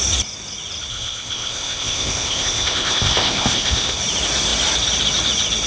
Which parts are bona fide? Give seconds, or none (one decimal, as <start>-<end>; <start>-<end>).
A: 0.0-0.9; 4.0-5.7

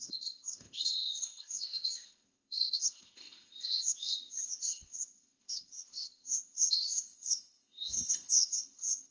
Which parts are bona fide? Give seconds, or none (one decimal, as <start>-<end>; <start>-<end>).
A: none

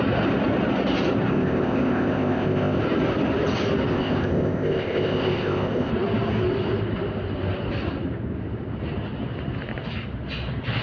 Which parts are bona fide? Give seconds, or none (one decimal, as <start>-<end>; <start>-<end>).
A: 0.0-1.3; 2.8-3.9; 5.9-10.8

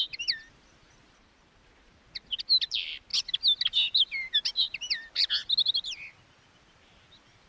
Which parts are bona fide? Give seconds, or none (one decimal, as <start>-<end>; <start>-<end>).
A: 0.0-7.5

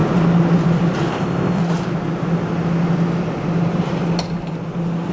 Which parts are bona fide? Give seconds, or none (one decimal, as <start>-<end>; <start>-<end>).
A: 0.0-1.1; 1.6-5.1

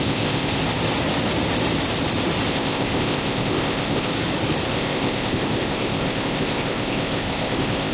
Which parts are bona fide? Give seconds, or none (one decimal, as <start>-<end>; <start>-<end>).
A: 0.6-2.5; 4.1-4.7

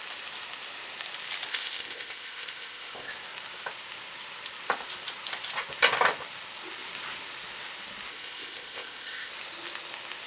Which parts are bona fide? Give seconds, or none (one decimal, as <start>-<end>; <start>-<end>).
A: 0.0-1.5; 3.1-8.1; 9.3-10.3